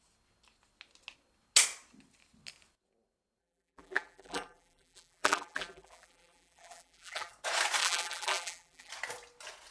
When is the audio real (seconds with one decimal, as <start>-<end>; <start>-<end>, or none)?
0.0-3.4; 7.3-7.8; 8.9-9.7